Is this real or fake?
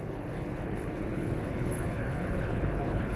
fake